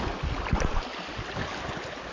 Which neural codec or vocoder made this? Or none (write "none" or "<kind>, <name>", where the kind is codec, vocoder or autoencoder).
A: none